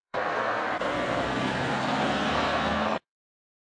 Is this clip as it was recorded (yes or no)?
no